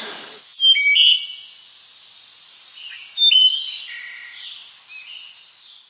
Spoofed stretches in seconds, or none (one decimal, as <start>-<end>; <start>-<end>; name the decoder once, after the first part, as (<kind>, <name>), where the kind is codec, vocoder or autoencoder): none